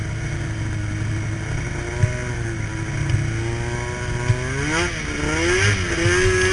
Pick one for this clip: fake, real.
real